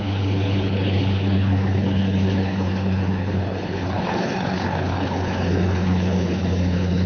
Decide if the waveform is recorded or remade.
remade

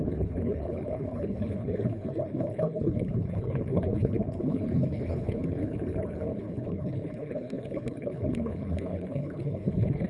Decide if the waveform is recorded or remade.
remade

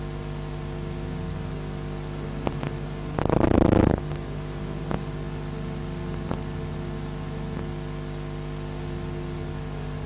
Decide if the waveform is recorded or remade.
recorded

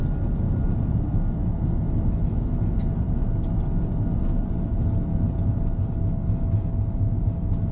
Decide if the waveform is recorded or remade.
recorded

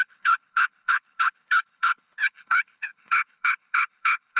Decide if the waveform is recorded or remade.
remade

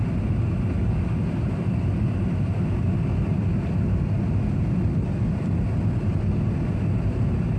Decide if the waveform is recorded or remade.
recorded